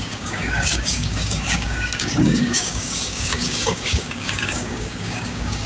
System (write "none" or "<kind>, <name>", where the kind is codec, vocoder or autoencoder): codec, DAC